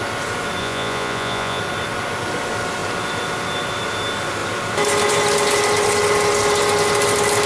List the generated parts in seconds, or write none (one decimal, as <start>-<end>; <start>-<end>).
0.6-1.6

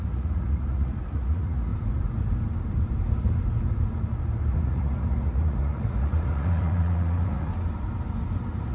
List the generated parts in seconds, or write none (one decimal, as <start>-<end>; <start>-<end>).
0.0-1.7; 4.5-7.5

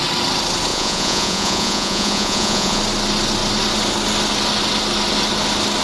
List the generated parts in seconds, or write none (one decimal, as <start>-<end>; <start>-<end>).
0.7-2.8

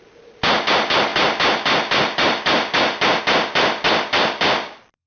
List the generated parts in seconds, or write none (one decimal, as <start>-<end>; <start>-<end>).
none